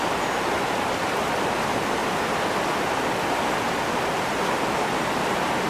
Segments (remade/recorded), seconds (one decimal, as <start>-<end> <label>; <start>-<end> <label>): 0.0-5.7 recorded